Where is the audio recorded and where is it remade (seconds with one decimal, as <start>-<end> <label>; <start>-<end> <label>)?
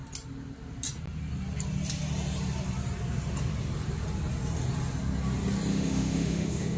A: 0.0-5.7 recorded; 5.7-6.8 remade